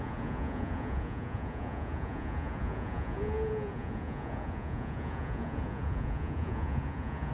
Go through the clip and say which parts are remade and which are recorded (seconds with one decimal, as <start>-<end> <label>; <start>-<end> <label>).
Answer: 0.0-7.3 remade